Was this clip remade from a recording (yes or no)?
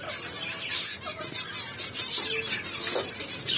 no